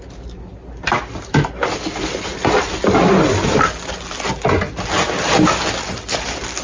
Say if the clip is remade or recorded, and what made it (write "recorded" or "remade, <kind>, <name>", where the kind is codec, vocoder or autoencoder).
recorded